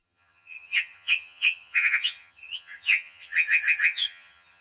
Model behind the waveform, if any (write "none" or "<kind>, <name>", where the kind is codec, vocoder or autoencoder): vocoder, HiFi-GAN